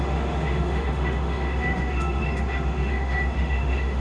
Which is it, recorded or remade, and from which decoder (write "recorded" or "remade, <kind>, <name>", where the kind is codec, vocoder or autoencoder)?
remade, autoencoder, DAC-VAE